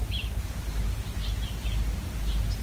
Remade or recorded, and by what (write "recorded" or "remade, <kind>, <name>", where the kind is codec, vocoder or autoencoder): recorded